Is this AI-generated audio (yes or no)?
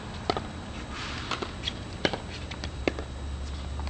no